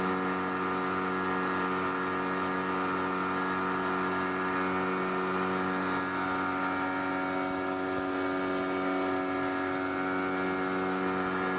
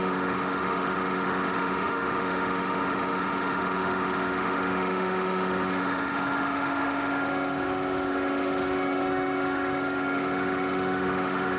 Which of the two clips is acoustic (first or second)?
first